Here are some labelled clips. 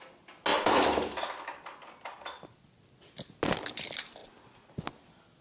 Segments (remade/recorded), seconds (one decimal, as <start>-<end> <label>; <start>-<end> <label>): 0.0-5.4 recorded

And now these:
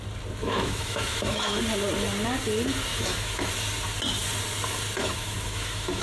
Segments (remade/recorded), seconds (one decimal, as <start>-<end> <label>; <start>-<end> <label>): 0.0-0.4 recorded; 0.4-1.6 remade; 1.6-2.9 recorded; 2.9-3.5 remade; 3.5-5.0 recorded; 5.0-6.0 remade

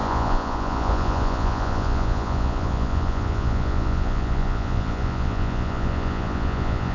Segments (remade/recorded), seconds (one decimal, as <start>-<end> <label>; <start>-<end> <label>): 0.0-6.9 remade

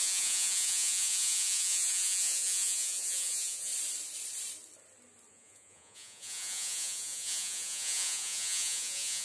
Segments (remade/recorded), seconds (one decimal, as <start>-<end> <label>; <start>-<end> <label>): 0.0-3.7 remade; 3.7-5.3 recorded; 5.3-9.2 remade